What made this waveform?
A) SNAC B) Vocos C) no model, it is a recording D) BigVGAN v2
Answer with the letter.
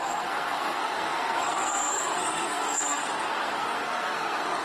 A